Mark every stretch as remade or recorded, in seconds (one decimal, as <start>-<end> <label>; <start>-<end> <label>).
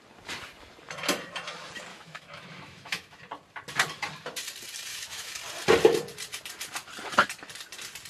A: 0.0-1.9 recorded; 1.9-3.2 remade; 3.2-4.9 recorded; 4.9-5.4 remade; 5.4-8.1 recorded